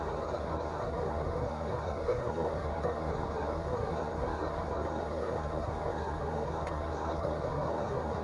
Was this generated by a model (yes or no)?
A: yes